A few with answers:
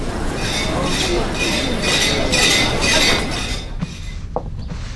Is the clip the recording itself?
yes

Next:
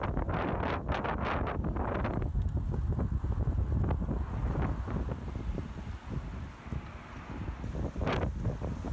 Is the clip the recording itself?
yes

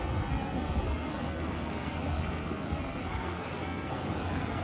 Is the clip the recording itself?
no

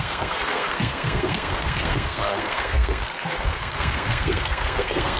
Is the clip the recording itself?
no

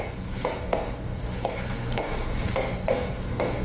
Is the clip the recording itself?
no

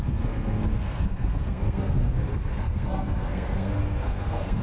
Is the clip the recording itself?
no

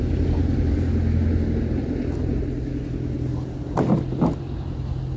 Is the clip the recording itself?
yes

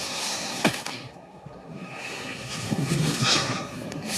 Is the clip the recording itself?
no